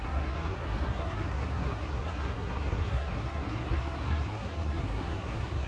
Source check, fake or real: fake